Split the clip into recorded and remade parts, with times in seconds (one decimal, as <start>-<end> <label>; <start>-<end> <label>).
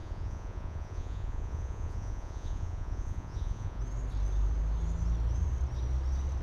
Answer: 0.0-3.8 remade; 3.8-6.4 recorded